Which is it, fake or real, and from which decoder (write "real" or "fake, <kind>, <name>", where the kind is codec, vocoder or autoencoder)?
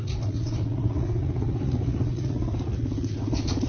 fake, vocoder, Vocos